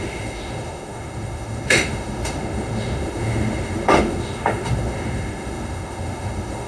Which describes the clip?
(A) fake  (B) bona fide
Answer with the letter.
A